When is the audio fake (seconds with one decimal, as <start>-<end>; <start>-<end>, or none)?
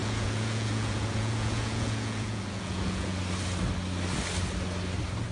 0.0-3.2